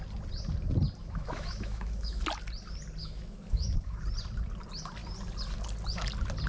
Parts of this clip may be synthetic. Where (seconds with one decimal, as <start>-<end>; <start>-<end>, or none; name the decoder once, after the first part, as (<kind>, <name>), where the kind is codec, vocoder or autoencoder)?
1.0-2.2 (autoencoder, DAC-VAE); 3.0-4.0